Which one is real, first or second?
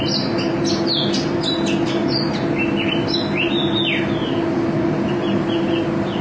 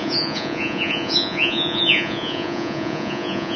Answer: first